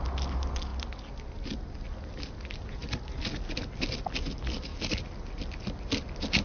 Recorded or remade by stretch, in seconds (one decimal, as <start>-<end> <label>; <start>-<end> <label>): 0.0-6.4 recorded